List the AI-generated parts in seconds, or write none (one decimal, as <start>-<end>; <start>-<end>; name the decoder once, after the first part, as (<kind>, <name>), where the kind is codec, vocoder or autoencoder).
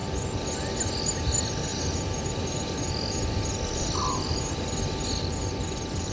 1.7-2.7 (vocoder, BigVGAN v2)